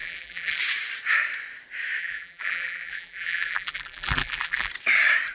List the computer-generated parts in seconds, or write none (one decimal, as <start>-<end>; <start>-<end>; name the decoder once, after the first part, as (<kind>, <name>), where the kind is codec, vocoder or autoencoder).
0.0-0.6 (vocoder, BigVGAN v2); 2.0-4.7